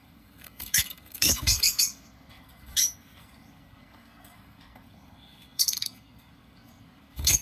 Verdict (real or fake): fake